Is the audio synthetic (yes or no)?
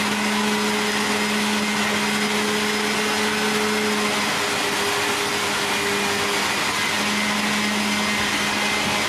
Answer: no